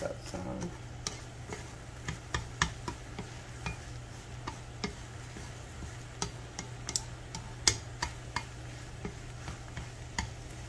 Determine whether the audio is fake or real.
real